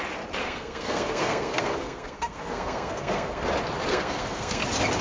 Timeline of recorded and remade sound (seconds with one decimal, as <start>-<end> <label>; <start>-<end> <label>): 0.0-0.4 recorded; 0.4-3.4 remade; 3.4-3.9 recorded; 3.9-4.6 remade; 4.6-5.0 recorded